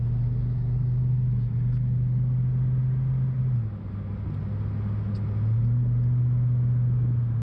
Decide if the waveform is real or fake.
real